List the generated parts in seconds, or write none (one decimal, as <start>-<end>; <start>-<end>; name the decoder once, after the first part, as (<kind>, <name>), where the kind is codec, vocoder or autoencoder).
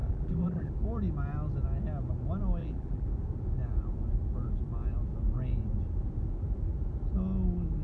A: 0.0-0.7 (vocoder, BigVGAN v2); 2.6-3.1